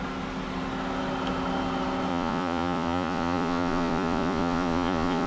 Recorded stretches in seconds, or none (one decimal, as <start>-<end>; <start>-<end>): 0.0-2.1